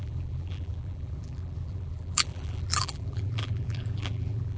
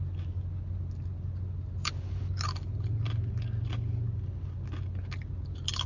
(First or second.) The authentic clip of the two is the second